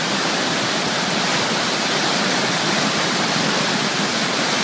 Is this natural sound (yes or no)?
yes